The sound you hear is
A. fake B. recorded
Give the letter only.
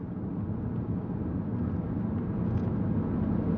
B